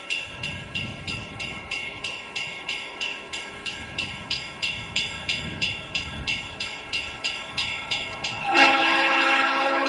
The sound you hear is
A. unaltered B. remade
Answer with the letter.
B